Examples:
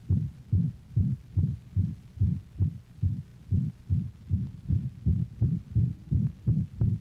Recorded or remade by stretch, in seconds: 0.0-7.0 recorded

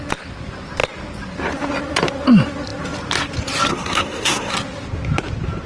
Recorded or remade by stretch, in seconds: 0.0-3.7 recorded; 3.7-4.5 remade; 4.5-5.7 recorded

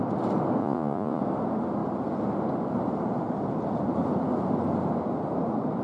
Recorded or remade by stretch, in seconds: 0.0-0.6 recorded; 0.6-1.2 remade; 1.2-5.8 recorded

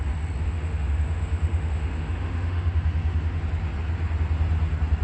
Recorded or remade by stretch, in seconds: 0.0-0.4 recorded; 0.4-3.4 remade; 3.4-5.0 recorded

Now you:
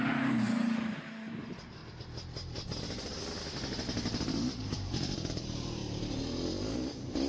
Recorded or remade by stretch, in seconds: 0.0-1.8 remade; 1.8-4.2 recorded; 4.2-5.8 remade; 5.8-7.3 recorded

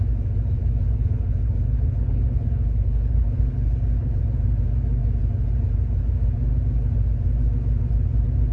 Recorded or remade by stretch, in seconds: 0.0-0.6 recorded; 0.6-4.2 remade; 4.2-8.5 recorded